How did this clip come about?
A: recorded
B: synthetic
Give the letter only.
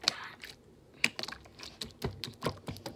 A